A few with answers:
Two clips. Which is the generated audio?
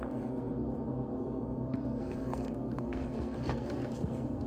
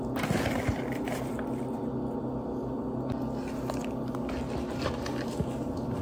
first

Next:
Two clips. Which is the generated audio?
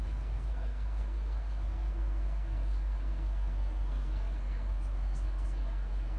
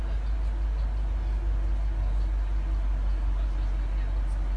first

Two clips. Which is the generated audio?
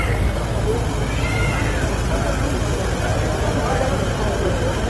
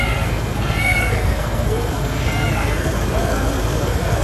second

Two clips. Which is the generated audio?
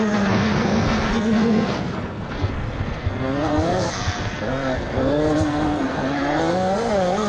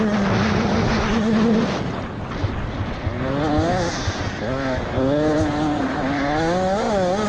first